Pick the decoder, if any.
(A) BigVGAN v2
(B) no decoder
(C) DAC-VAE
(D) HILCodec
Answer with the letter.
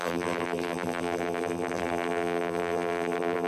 A